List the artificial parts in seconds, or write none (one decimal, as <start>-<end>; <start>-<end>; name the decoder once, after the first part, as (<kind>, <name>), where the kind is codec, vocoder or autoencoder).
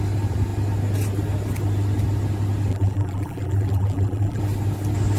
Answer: 2.7-4.4 (vocoder, BigVGAN v2)